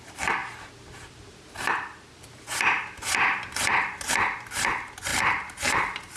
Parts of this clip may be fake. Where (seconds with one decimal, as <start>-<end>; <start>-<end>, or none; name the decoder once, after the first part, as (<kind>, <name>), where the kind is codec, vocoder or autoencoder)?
5.1-6.2 (vocoder, BigVGAN v2)